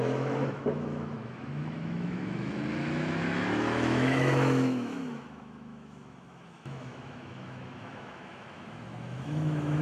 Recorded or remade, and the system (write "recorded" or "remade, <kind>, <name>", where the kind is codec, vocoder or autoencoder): remade, autoencoder, DAC-VAE